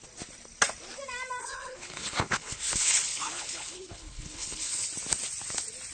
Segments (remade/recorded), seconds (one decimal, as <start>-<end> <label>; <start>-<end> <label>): 0.0-1.4 recorded; 1.4-4.9 remade; 4.9-5.9 recorded